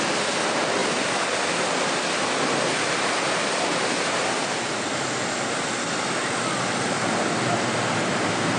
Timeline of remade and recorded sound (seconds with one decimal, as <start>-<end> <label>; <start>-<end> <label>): 0.0-8.6 recorded